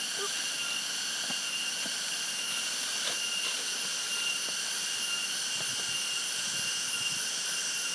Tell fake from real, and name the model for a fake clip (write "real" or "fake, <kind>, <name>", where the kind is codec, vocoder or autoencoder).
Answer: real